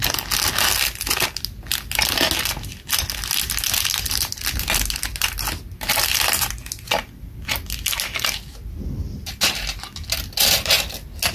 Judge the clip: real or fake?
real